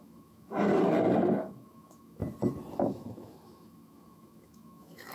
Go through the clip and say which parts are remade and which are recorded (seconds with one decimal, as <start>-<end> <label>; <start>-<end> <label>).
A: 0.0-0.7 remade; 0.7-1.3 recorded; 1.3-2.2 remade; 2.2-2.8 recorded; 2.8-5.1 remade